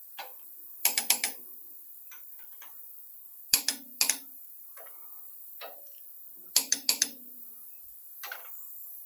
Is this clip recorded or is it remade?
remade